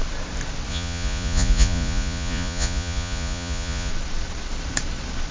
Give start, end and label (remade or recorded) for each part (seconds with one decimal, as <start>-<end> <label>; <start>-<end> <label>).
0.0-0.7 recorded; 0.7-3.9 remade; 3.9-5.3 recorded